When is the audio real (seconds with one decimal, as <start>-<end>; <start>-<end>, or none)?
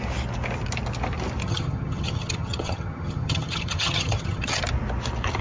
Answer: 0.0-1.4; 4.6-5.4